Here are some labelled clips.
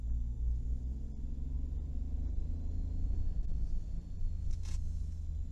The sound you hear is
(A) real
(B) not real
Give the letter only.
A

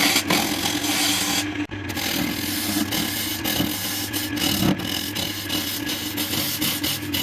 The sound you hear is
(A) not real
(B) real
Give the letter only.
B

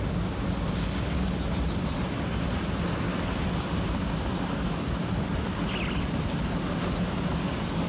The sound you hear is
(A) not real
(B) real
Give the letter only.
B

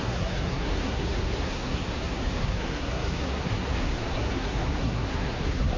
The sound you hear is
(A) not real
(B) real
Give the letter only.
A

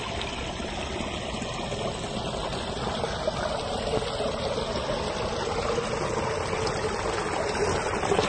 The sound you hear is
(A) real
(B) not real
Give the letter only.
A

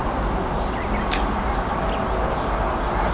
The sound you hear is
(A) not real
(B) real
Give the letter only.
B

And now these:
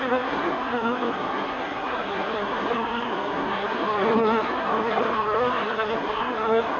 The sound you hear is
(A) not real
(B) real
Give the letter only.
A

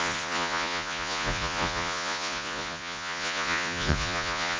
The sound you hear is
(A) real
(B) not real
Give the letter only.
B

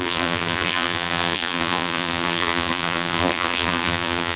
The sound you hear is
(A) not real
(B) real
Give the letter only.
A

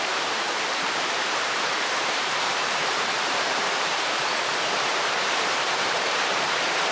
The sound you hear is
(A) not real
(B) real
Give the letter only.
A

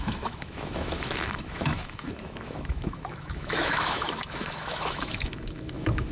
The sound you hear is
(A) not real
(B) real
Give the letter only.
A